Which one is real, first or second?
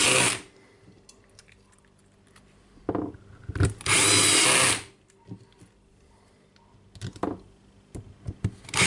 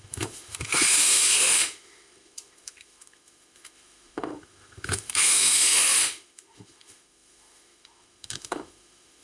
first